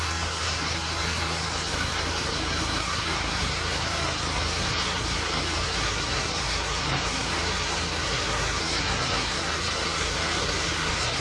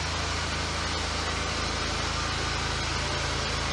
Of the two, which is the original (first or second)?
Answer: second